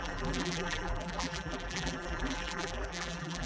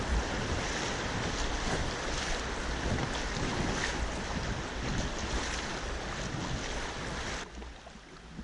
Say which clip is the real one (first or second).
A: second